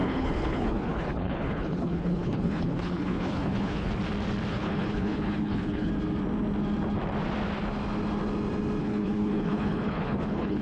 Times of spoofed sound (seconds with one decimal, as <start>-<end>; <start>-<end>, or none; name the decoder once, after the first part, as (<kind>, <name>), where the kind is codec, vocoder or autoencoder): 0.0-3.9 (codec, HILCodec); 4.5-5.9; 8.8-10.6